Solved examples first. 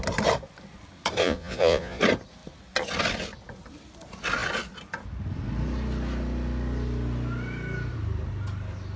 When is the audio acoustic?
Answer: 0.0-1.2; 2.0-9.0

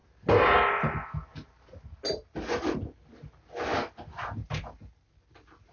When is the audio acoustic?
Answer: 0.0-5.7

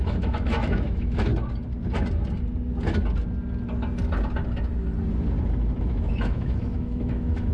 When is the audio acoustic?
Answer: 1.3-5.8

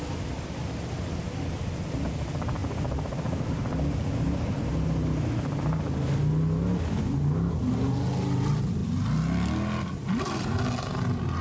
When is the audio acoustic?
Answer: 0.0-11.4